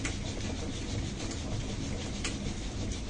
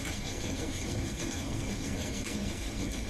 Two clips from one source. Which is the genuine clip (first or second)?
first